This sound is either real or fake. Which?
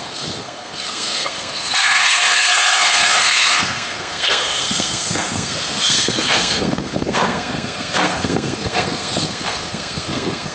fake